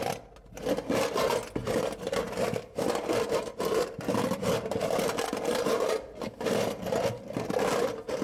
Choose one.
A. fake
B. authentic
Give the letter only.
B